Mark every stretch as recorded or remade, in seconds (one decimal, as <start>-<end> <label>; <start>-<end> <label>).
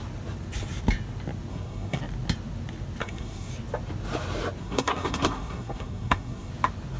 0.0-1.5 recorded; 1.5-2.0 remade; 2.0-3.0 recorded; 3.0-3.5 remade; 3.5-4.6 recorded; 4.6-6.5 remade; 6.5-7.0 recorded